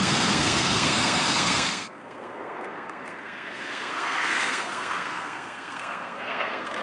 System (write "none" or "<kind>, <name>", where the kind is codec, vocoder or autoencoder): codec, SNAC